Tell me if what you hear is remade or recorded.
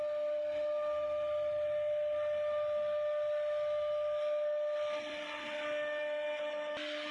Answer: recorded